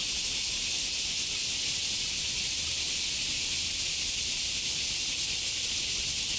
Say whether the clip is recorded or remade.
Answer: recorded